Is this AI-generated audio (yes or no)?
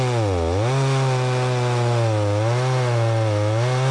no